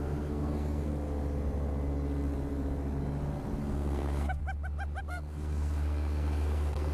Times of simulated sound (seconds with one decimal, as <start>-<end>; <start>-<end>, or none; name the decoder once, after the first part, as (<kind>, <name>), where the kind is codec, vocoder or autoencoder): 0.0-0.9 (codec, SNAC); 3.6-4.4; 5.0-6.9

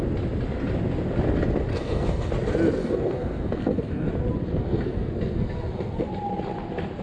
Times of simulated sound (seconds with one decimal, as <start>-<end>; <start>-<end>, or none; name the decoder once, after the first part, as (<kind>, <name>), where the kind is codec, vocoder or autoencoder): 1.7-2.3 (codec, SNAC); 2.8-4.1; 4.6-6.1

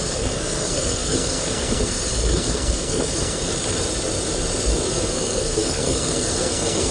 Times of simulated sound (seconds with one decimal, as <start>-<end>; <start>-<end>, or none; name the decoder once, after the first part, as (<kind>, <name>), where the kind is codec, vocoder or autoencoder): 0.0-3.5 (codec, SNAC); 4.9-6.9

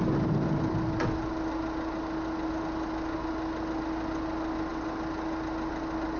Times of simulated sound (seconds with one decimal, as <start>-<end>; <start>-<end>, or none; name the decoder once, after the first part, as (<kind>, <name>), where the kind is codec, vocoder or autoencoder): none

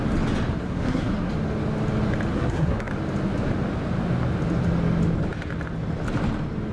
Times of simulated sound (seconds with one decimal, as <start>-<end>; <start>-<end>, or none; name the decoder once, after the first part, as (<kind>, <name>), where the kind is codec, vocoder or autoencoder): 0.6-1.3 (codec, SNAC); 2.3-2.9

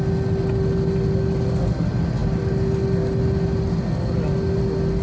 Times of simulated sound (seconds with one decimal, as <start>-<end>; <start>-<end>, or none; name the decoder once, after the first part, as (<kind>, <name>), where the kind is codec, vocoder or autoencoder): none